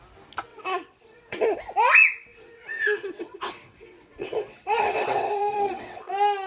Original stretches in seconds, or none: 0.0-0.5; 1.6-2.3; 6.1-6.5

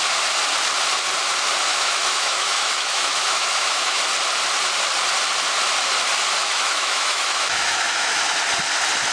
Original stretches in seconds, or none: 0.0-1.7; 4.0-6.4; 8.2-9.1